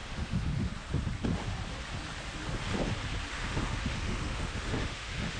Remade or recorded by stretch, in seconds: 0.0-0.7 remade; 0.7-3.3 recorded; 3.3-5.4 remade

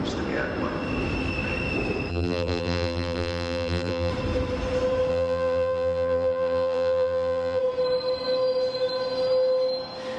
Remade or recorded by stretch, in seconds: 0.0-2.1 recorded; 2.1-4.1 remade; 4.1-5.1 recorded; 5.1-7.6 remade; 7.6-10.2 recorded